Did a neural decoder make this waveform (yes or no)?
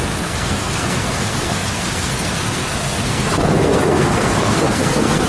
yes